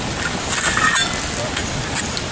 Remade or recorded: recorded